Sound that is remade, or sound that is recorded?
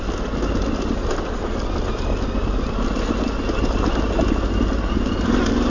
recorded